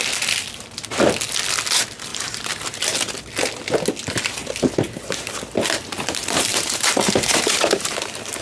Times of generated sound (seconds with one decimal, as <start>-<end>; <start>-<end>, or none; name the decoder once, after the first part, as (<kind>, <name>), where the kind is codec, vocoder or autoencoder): 2.1-2.8 (vocoder, BigVGAN v2); 6.5-8.4